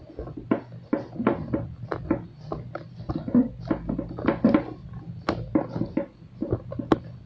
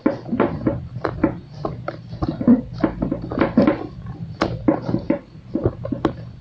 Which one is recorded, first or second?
first